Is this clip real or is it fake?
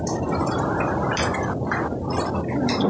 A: real